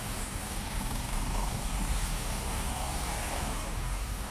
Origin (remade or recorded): remade